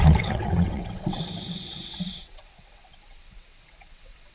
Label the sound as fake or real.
fake